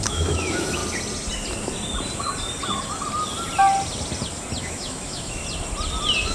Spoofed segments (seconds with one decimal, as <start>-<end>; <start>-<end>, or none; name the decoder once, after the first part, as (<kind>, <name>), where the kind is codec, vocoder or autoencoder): 0.0-0.8 (autoencoder, DAC-VAE); 4.6-5.4